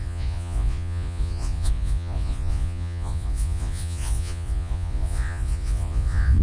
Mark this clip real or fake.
fake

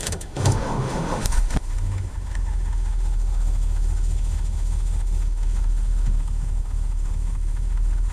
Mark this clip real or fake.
fake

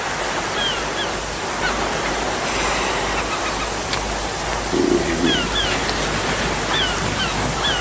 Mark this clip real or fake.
real